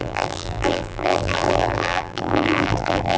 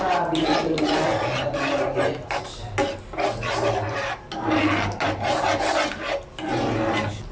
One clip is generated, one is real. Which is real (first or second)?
second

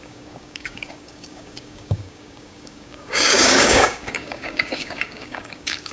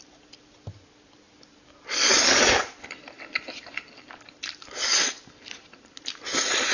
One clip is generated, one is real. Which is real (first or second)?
second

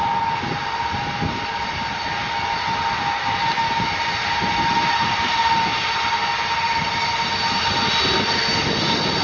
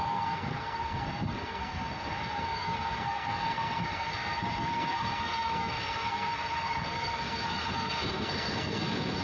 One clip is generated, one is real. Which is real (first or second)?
first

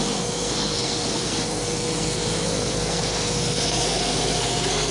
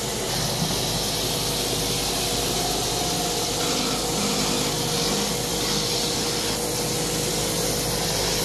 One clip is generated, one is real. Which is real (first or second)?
second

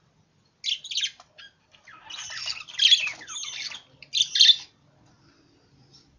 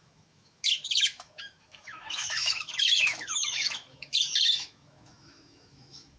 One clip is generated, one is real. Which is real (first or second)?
first